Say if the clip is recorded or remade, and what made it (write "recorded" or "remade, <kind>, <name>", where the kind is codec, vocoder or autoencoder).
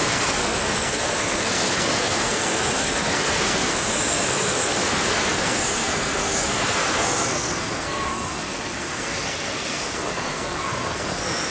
remade, codec, SNAC